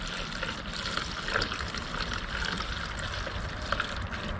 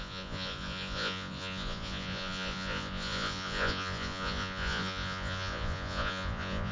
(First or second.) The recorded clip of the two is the first